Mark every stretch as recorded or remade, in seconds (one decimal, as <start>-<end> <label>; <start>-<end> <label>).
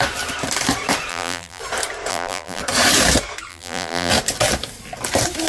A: 0.0-1.1 recorded; 1.1-1.6 remade; 1.6-2.1 recorded; 2.1-2.6 remade; 2.6-3.5 recorded; 3.5-4.1 remade; 4.1-5.5 recorded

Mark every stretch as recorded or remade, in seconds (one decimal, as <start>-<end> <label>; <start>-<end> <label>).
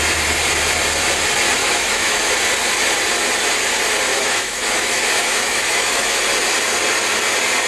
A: 0.0-1.6 recorded; 1.6-2.3 remade; 2.3-4.1 recorded; 4.1-6.2 remade; 6.2-7.7 recorded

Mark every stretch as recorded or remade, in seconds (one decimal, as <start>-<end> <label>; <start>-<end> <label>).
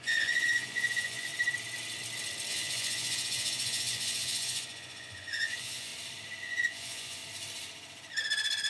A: 0.0-1.3 remade; 1.3-2.5 recorded; 2.5-5.9 remade; 5.9-6.4 recorded; 6.4-7.2 remade; 7.2-8.7 recorded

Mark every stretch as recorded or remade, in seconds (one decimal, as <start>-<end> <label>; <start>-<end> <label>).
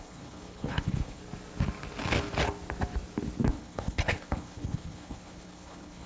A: 0.0-1.2 remade; 1.2-3.5 recorded; 3.5-6.1 remade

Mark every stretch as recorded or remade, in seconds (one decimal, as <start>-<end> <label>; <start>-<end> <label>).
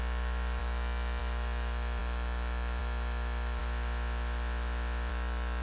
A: 0.0-3.6 remade; 3.6-5.1 recorded; 5.1-5.6 remade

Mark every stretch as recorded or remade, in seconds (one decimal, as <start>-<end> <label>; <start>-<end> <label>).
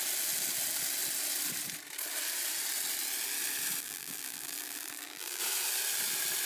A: 0.0-3.8 recorded; 3.8-5.4 remade; 5.4-6.5 recorded